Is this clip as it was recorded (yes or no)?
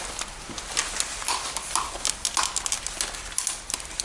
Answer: yes